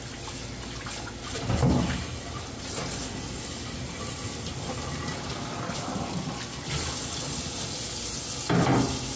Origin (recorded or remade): recorded